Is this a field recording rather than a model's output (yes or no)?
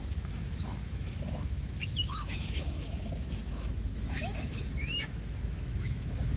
no